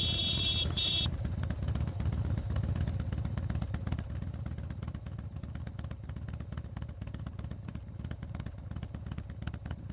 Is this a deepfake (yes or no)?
yes